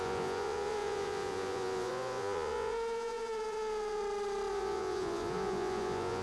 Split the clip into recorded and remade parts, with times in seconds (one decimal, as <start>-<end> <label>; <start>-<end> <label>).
0.0-4.0 remade; 4.0-4.5 recorded; 4.5-6.2 remade